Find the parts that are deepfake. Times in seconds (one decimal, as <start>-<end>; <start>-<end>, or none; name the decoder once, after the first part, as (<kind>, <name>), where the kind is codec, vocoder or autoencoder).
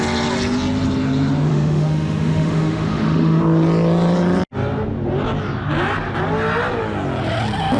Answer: 1.5-3.4 (autoencoder, DAC-VAE)